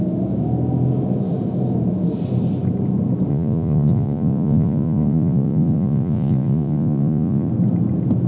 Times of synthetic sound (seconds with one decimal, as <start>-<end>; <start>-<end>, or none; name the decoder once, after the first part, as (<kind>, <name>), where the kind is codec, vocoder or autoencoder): 3.3-7.5 (vocoder, Vocos)